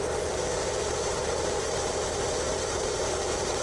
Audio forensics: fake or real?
real